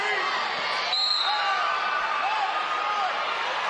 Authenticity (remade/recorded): recorded